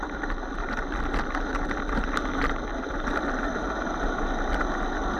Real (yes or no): yes